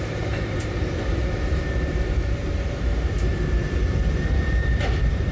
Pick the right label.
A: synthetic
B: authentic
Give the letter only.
A